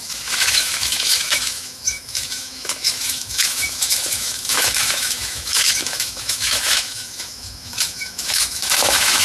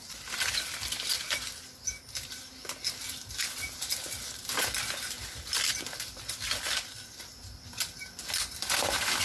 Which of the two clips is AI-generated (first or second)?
first